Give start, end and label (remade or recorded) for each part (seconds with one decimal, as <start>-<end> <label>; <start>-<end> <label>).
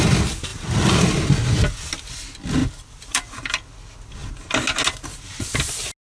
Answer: 0.0-2.6 recorded; 2.6-3.5 remade; 3.5-6.1 recorded